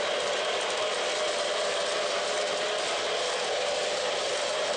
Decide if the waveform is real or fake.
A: real